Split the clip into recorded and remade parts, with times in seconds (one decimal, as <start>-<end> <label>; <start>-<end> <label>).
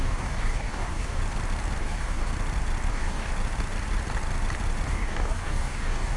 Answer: 0.0-1.2 remade; 1.2-1.8 recorded; 1.8-2.3 remade; 2.3-2.9 recorded; 2.9-3.3 remade; 3.3-4.9 recorded; 4.9-6.2 remade